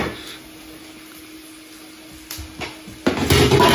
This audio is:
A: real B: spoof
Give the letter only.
A